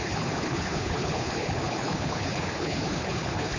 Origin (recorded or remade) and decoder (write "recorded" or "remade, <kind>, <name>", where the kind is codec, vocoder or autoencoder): remade, codec, HILCodec